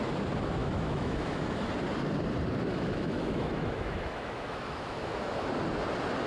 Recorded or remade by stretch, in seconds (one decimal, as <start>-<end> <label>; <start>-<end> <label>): 0.0-0.6 recorded; 0.6-1.7 remade; 1.7-2.7 recorded; 2.7-5.5 remade; 5.5-6.3 recorded